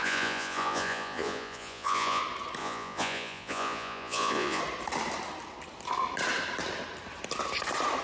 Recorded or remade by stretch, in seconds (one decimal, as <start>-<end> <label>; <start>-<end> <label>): 0.0-2.2 remade; 2.2-2.6 recorded; 2.6-4.6 remade; 4.6-8.0 recorded